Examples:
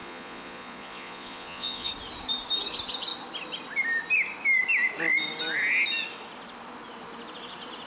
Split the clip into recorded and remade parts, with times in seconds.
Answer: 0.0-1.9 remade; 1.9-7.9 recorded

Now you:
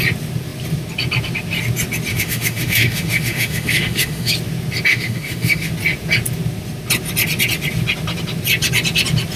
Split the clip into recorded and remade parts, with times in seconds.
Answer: 0.0-2.1 recorded; 2.1-4.3 remade; 4.3-4.9 recorded; 4.9-5.7 remade; 5.7-9.4 recorded

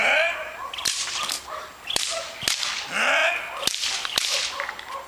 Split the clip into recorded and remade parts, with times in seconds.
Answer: 0.0-5.1 recorded

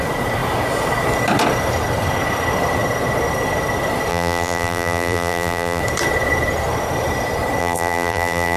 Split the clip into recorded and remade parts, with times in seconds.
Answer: 0.0-4.1 recorded; 4.1-5.8 remade; 5.8-7.6 recorded; 7.6-8.6 remade